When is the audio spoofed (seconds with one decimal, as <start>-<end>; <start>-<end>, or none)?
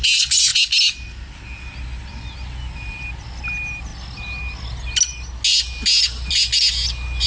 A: none